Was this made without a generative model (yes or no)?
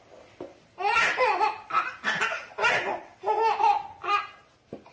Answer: yes